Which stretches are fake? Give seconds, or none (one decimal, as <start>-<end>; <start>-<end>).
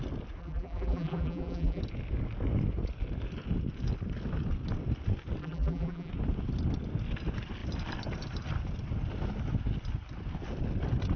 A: 0.4-1.8; 5.4-6.1